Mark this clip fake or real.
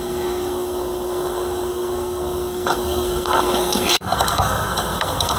fake